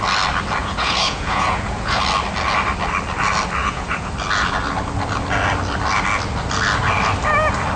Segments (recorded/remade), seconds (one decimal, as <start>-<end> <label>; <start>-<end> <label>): 0.0-0.6 recorded; 0.6-2.0 remade; 2.0-3.6 recorded; 3.6-4.1 remade; 4.1-7.8 recorded